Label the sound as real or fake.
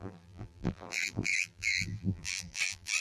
fake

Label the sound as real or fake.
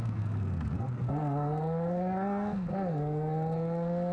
fake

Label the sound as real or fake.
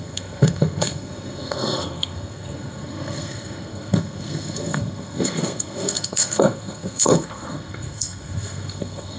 fake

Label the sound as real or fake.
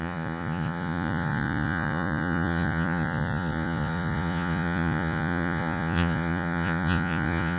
fake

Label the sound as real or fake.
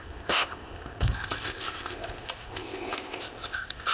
fake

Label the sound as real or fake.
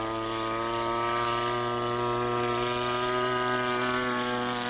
real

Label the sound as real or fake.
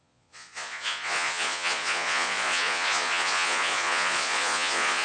fake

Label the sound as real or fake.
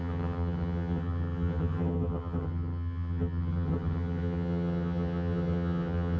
fake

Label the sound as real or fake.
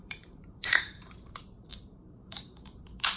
fake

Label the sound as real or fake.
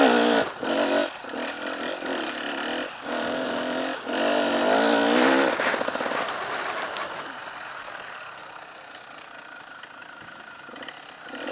real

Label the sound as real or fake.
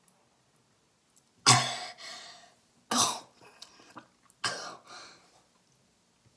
real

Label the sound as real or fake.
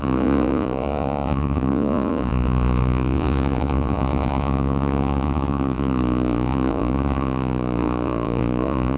fake